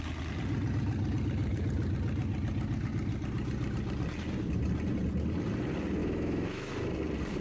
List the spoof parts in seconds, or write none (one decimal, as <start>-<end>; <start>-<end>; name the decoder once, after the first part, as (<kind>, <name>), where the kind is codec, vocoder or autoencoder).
6.0-6.7 (autoencoder, DAC-VAE)